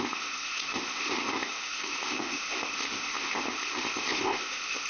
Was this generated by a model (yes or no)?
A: yes